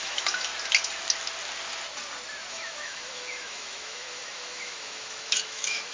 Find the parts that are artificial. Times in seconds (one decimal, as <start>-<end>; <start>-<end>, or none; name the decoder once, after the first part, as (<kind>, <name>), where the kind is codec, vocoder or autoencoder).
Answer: 0.0-0.5 (autoencoder, DAC-VAE); 2.5-5.9